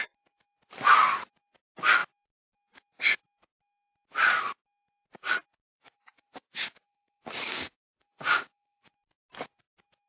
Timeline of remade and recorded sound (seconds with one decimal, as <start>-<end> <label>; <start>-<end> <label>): 0.0-5.7 recorded; 5.7-8.9 remade; 8.9-10.1 recorded